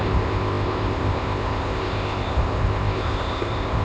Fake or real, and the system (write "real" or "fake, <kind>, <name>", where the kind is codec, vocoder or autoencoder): fake, codec, ZipCodec